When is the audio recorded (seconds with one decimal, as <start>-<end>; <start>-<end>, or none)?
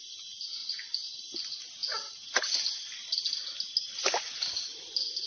0.0-5.3